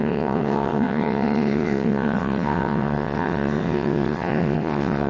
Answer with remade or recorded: remade